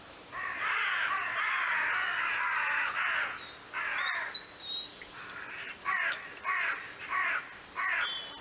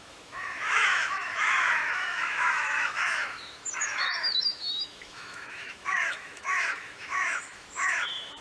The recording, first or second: first